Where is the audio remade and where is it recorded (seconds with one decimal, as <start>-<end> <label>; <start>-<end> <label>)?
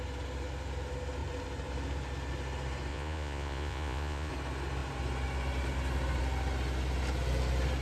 0.0-2.9 recorded; 2.9-4.3 remade; 4.3-7.8 recorded